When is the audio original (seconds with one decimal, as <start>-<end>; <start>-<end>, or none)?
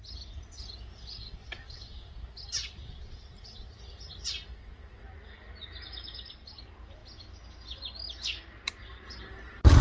0.0-1.2; 2.2-2.6; 3.7-4.5; 5.0-9.8